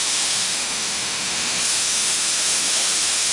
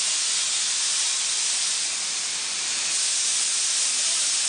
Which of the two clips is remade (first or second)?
first